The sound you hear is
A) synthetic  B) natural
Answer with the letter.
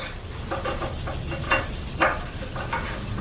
B